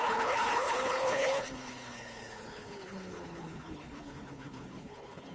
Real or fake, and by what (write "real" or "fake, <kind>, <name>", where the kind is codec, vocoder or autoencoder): fake, codec, HILCodec